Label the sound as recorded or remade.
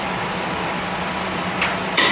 remade